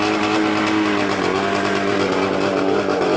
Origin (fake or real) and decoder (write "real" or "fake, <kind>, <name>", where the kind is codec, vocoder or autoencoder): real